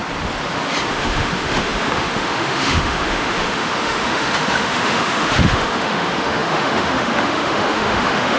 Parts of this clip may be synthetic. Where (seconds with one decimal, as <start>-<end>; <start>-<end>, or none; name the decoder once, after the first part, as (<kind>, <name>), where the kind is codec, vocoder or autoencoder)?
0.9-8.4 (autoencoder, DAC-VAE)